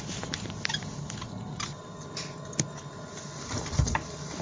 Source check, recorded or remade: remade